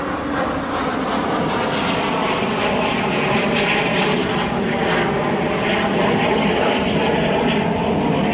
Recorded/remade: recorded